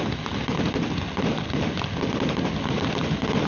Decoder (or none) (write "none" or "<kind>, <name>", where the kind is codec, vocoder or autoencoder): none